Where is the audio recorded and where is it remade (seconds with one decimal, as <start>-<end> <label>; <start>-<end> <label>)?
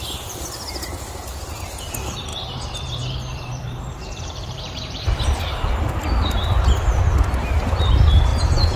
0.0-2.3 recorded; 2.3-5.2 remade; 5.2-8.3 recorded; 8.3-8.8 remade